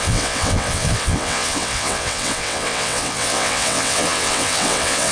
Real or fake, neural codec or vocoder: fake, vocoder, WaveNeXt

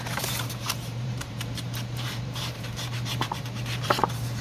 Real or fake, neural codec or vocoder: fake, vocoder, BigVGAN v2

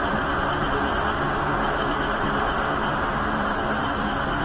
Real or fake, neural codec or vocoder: fake, vocoder, BigVGAN v2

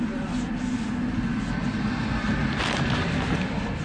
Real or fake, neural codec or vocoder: real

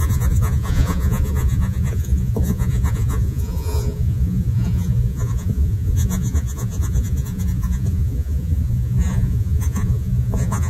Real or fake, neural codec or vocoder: fake, vocoder, Vocos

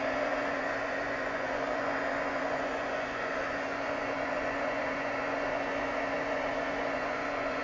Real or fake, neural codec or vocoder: fake, vocoder, Vocos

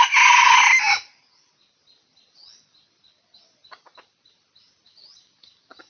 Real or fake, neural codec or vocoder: real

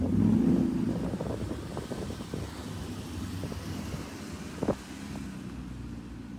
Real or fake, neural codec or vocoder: real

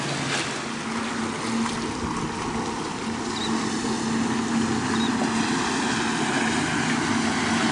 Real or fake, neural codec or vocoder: real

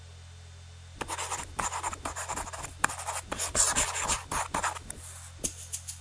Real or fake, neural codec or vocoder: real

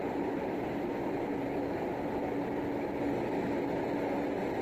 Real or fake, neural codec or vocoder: real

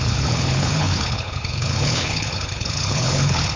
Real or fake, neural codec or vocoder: fake, codec, HILCodec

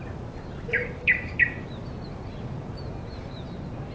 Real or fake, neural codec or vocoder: real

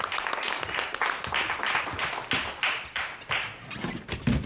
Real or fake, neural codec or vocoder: real